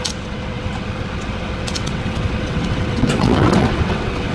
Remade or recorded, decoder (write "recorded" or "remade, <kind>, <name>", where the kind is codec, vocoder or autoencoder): remade, vocoder, WaveNeXt